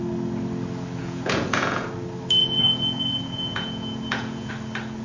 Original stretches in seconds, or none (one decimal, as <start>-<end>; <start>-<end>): 0.0-1.0; 1.9-2.4; 4.5-5.0